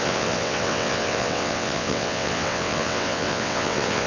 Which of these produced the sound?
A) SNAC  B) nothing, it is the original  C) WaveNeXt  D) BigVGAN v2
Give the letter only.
C